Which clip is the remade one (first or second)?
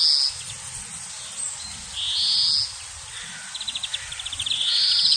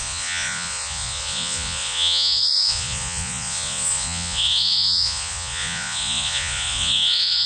second